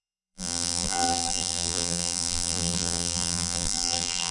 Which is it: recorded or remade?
remade